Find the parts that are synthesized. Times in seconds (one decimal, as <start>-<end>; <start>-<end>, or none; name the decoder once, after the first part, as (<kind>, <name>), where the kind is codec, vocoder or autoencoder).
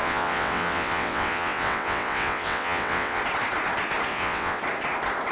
0.0-3.2 (vocoder, WaveNeXt); 4.1-4.6